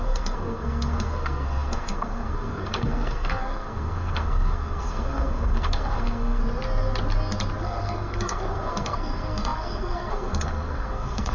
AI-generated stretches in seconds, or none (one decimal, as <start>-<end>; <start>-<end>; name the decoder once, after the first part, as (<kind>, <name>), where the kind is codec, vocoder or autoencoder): 0.0-6.4 (codec, SNAC); 7.6-11.3